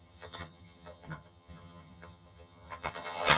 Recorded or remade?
remade